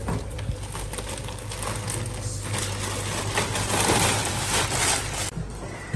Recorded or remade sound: recorded